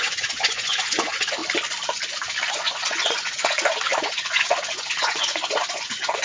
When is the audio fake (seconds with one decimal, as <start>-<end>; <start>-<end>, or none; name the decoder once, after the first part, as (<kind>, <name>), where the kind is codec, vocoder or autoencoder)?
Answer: 0.0-1.4 (vocoder, Vocos); 2.5-6.2